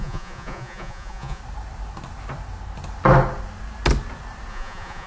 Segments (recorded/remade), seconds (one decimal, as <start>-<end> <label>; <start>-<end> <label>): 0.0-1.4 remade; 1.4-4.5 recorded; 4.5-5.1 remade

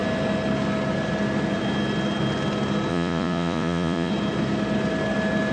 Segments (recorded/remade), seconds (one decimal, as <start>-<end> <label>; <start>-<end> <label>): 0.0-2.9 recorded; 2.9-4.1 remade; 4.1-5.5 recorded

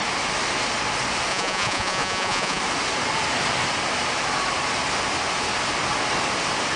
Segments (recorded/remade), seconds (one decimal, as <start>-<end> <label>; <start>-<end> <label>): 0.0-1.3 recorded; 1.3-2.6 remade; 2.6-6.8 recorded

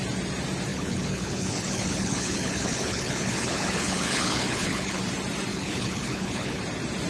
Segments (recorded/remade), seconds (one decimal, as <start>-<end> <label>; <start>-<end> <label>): 0.0-0.7 recorded; 0.7-5.0 remade; 5.0-5.5 recorded; 5.5-6.6 remade; 6.6-7.1 recorded

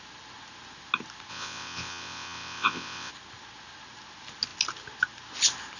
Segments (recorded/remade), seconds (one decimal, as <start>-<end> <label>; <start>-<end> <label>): 0.0-1.3 recorded; 1.3-3.1 remade; 3.1-5.8 recorded